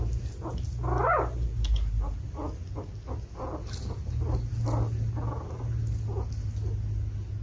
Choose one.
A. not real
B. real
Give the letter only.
B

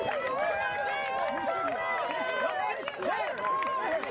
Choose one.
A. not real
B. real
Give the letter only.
B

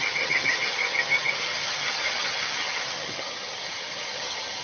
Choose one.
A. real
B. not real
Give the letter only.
B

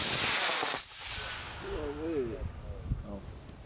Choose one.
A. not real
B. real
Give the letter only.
B